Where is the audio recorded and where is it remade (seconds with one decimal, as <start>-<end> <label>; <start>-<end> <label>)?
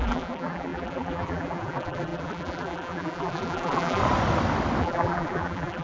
0.0-4.0 remade; 4.0-4.8 recorded; 4.8-5.8 remade